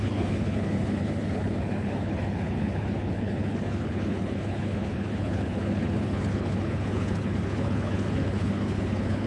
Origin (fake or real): fake